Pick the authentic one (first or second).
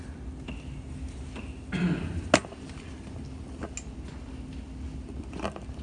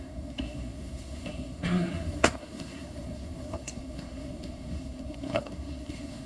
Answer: first